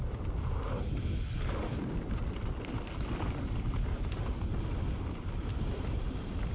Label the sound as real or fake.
real